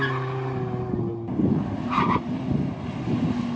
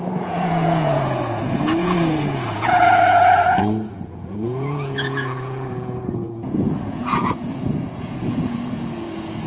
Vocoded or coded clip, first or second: second